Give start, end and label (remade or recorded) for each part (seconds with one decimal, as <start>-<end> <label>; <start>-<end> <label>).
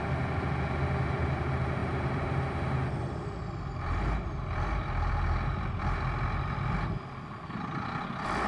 0.0-8.5 recorded